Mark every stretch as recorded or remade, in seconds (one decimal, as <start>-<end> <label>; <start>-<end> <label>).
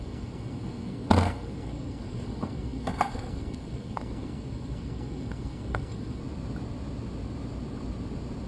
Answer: 0.0-6.2 remade; 6.2-8.5 recorded